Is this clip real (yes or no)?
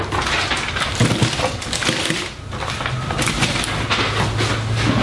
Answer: yes